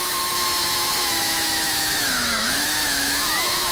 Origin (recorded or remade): remade